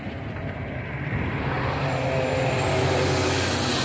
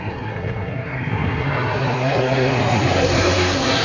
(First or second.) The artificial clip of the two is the second